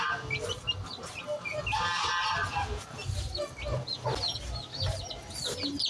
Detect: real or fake real